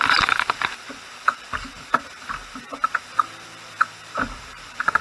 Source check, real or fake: fake